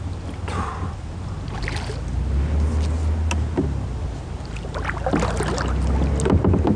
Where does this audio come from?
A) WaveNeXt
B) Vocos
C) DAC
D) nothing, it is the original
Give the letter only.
D